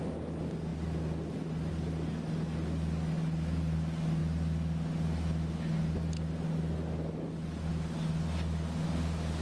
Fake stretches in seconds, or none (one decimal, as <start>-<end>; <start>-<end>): none